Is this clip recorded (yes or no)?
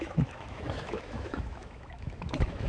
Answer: no